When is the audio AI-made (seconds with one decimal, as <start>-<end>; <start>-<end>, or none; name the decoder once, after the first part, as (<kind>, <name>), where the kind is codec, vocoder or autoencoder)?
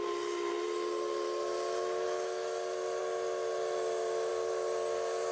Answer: none